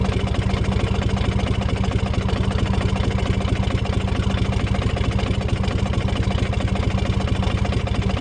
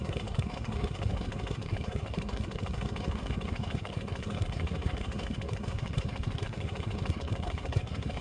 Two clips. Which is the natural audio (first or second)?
first